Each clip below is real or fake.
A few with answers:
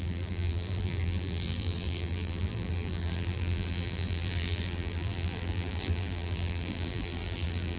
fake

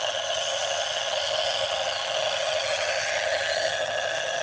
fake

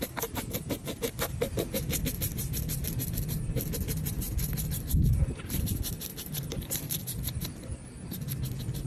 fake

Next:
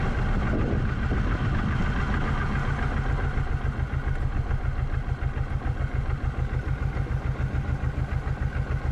real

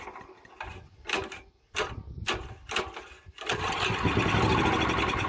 real